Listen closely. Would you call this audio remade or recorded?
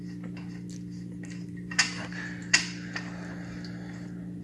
recorded